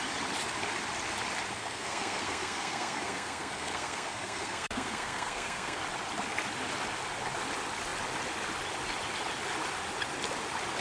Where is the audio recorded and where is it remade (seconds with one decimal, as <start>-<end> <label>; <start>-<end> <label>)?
0.0-1.6 recorded; 1.6-5.8 remade; 5.8-10.8 recorded